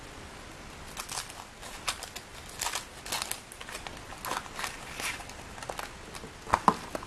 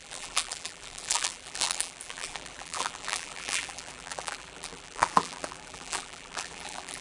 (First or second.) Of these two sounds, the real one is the first